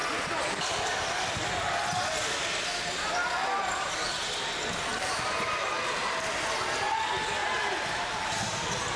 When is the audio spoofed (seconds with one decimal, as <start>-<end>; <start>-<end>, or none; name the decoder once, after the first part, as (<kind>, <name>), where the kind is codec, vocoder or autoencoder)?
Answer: 7.4-8.6 (vocoder, BigVGAN v2)